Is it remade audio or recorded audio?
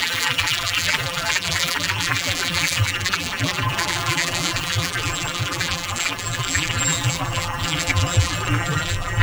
remade